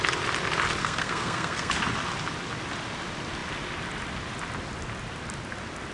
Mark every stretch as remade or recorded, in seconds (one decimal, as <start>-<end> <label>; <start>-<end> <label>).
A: 0.0-0.8 recorded; 0.8-1.7 remade; 1.7-5.9 recorded